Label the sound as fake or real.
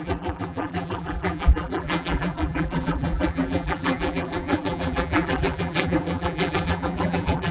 fake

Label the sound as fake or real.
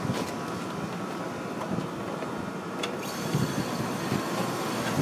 fake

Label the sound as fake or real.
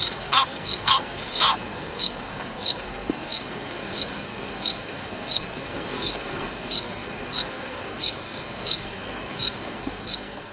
fake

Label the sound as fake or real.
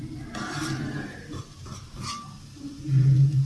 fake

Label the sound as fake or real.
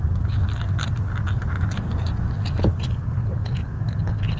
real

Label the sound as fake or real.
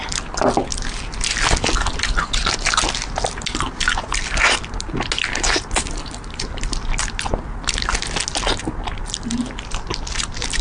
real